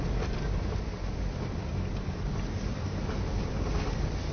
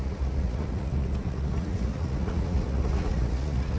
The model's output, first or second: second